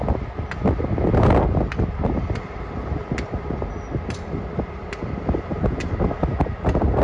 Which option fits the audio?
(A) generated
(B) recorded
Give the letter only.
B